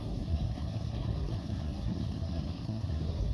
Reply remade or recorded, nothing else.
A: remade